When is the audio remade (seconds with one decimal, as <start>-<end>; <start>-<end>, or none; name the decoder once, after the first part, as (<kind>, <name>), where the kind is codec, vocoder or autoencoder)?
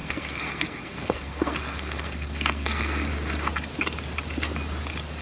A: 0.0-3.1 (codec, SNAC)